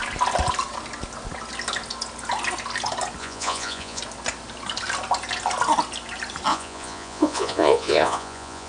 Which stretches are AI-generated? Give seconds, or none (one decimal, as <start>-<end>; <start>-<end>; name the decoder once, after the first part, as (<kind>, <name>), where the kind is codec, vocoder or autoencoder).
3.2-4.0 (vocoder, Vocos); 6.5-8.7